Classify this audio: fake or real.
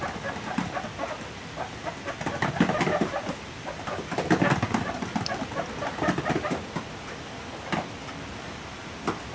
real